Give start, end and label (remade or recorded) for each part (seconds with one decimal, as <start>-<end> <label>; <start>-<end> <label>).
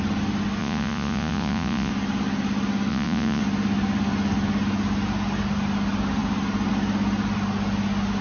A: 0.0-0.6 recorded; 0.6-1.9 remade; 1.9-2.9 recorded; 2.9-3.4 remade; 3.4-8.2 recorded